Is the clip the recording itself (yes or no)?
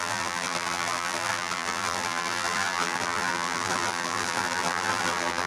no